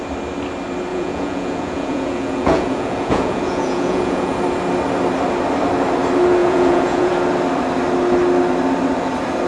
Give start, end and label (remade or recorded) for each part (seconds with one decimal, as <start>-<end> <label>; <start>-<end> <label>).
0.0-0.9 recorded; 0.9-4.4 remade; 4.4-6.4 recorded; 6.4-7.1 remade; 7.1-9.5 recorded

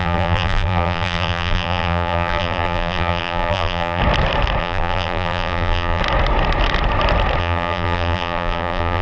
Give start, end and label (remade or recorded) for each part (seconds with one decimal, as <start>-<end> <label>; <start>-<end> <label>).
0.0-4.0 remade; 4.0-4.6 recorded; 4.6-6.0 remade; 6.0-7.4 recorded; 7.4-9.0 remade

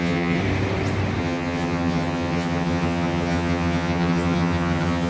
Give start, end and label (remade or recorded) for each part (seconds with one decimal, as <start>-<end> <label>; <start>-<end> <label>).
0.0-0.4 remade; 0.4-1.2 recorded; 1.2-5.1 remade

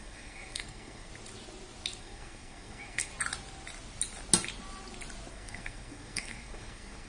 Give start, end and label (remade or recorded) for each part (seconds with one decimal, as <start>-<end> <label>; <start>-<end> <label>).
0.0-1.1 remade; 1.1-2.0 recorded; 2.0-3.1 remade; 3.1-5.3 recorded; 5.3-7.1 remade

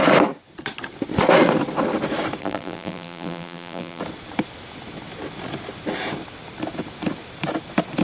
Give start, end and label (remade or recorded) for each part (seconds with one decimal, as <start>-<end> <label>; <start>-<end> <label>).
0.0-2.4 recorded; 2.4-4.0 remade; 4.0-8.0 recorded

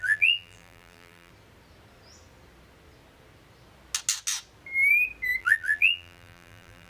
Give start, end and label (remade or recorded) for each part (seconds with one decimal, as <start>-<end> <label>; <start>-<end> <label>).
0.0-1.3 remade; 1.3-5.4 recorded; 5.4-6.9 remade

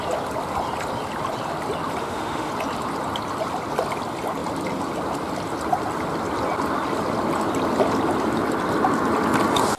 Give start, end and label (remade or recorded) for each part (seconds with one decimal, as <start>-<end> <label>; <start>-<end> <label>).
0.0-2.0 recorded; 2.0-2.5 remade; 2.5-9.8 recorded